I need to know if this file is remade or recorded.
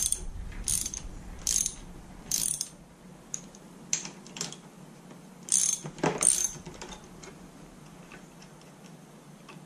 recorded